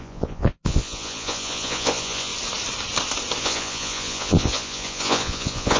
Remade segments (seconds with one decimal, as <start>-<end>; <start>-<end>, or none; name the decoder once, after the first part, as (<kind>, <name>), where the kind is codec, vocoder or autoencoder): 0.0-2.3 (vocoder, Vocos); 3.4-5.8